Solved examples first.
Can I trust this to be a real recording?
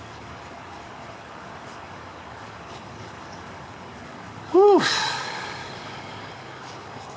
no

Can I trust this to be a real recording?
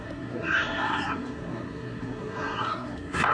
no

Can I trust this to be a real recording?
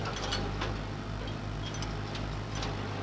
yes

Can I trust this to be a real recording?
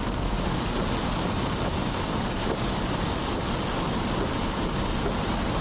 yes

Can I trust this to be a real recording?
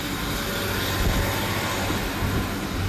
yes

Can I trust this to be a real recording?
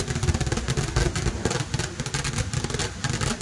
yes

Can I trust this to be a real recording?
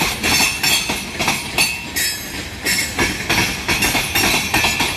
yes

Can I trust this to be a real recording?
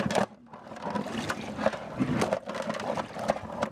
yes